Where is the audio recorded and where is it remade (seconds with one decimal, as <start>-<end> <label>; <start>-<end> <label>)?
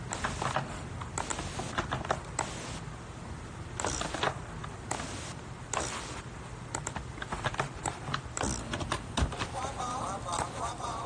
0.0-11.1 recorded